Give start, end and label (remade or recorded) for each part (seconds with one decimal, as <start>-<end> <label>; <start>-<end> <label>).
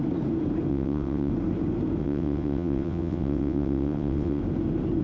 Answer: 0.0-0.7 recorded; 0.7-1.3 remade; 1.3-2.0 recorded; 2.0-4.4 remade; 4.4-5.0 recorded